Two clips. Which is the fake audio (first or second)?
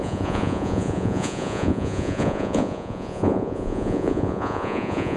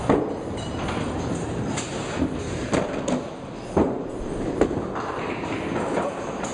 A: first